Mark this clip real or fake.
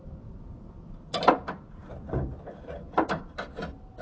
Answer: real